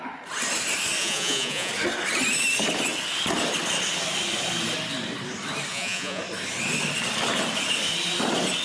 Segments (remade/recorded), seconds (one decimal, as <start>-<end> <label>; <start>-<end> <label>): 0.0-1.0 recorded; 1.0-1.7 remade; 1.7-5.7 recorded; 5.7-6.2 remade; 6.2-8.6 recorded